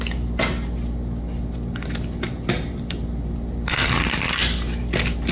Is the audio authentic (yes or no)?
yes